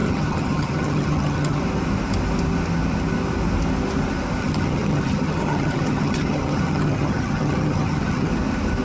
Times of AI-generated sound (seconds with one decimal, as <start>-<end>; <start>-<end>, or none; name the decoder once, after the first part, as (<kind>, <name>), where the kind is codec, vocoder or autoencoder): 0.0-1.6 (vocoder, HiFi-GAN); 4.4-8.3